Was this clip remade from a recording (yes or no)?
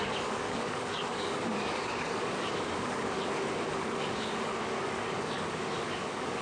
yes